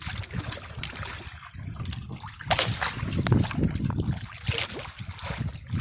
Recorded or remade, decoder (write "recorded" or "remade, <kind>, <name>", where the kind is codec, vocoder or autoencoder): recorded